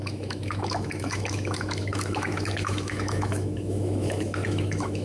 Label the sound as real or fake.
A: fake